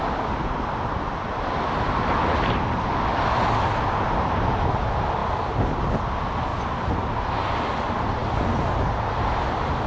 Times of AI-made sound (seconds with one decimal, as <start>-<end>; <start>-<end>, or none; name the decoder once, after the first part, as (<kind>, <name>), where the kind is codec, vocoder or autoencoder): 6.5-7.3 (vocoder, BigVGAN v2)